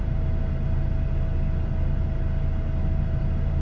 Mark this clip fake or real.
real